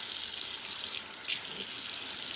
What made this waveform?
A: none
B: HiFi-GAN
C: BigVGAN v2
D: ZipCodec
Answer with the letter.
A